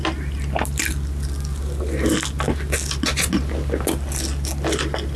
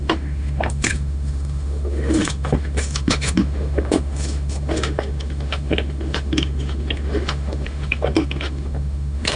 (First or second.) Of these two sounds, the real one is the first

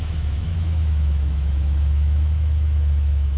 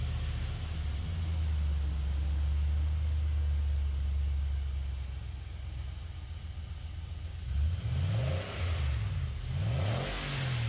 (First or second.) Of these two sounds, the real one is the second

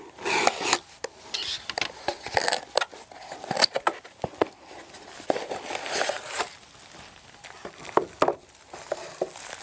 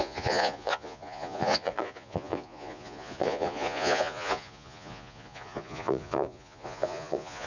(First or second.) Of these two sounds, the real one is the first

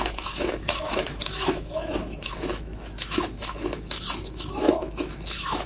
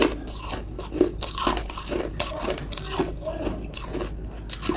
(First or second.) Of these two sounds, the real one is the second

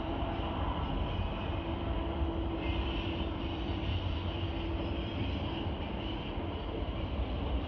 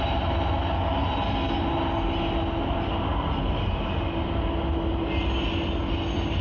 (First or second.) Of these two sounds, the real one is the second